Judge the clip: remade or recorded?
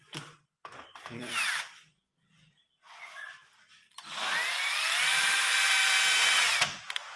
remade